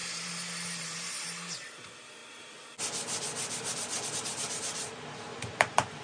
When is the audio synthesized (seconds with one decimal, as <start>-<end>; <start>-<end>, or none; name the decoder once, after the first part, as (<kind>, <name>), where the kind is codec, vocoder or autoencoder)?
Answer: 0.0-2.2 (vocoder, BigVGAN v2); 4.1-6.0